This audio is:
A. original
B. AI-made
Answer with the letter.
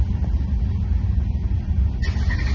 A